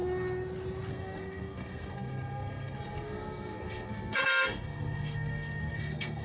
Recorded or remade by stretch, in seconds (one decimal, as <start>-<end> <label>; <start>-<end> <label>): 0.0-0.9 recorded; 0.9-6.2 remade